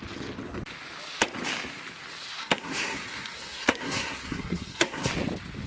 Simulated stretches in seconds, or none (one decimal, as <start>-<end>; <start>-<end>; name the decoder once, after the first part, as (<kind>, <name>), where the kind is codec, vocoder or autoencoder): 2.4-5.1 (codec, SNAC)